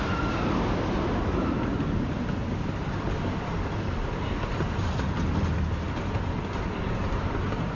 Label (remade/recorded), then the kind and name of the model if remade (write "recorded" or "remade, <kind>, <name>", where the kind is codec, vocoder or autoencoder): recorded